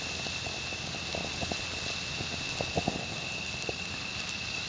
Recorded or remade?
recorded